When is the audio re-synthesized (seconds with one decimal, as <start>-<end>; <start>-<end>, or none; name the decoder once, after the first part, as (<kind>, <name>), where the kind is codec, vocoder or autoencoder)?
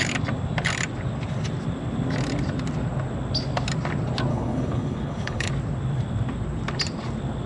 4.3-5.5 (codec, HILCodec)